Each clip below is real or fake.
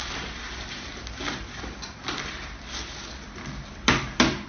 real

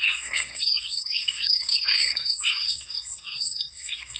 fake